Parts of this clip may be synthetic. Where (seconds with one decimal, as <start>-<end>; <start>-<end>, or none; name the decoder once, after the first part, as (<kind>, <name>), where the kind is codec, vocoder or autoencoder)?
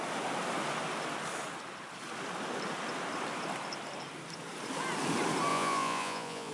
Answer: 5.5-6.5 (vocoder, Vocos)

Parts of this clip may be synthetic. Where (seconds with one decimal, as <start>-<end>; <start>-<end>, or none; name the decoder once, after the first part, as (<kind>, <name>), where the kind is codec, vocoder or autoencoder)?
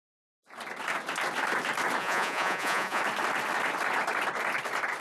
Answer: 2.0-3.0 (vocoder, Vocos)